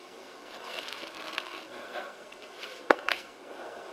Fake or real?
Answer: fake